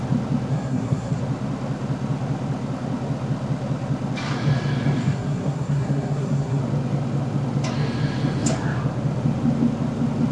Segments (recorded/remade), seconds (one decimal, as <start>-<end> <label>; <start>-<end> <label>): 0.0-0.5 recorded; 0.5-1.2 remade; 1.2-5.0 recorded; 5.0-6.6 remade; 6.6-10.3 recorded